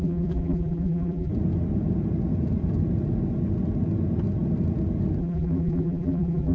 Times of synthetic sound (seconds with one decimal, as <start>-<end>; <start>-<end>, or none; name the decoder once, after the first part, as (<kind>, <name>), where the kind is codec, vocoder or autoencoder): 0.0-1.3 (vocoder, BigVGAN v2); 5.2-6.5